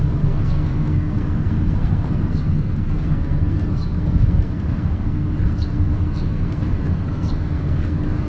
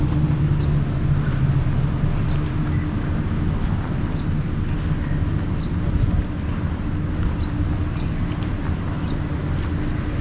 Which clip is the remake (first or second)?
first